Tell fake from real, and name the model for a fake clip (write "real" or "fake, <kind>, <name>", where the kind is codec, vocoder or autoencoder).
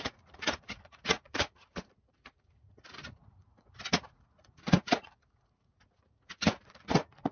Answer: fake, vocoder, Vocos